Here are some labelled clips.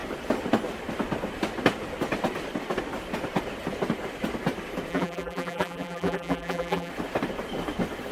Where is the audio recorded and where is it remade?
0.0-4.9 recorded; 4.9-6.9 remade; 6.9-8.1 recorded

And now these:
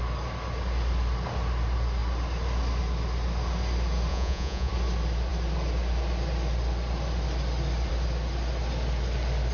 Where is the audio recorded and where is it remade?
0.0-4.1 recorded; 4.1-4.7 remade; 4.7-9.5 recorded